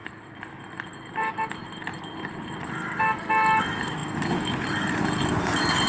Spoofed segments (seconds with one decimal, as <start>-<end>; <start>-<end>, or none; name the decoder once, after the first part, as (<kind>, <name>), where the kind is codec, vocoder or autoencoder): none